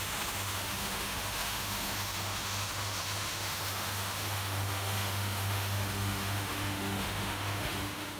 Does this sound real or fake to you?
fake